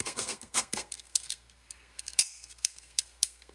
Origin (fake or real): fake